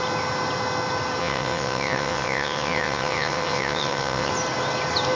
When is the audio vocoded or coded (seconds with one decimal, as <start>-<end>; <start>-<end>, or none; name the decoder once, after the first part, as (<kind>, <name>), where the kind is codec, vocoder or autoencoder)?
1.2-4.3 (vocoder, WaveNeXt)